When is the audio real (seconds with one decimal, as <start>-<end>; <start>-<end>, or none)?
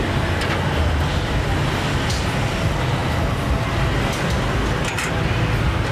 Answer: 0.0-5.9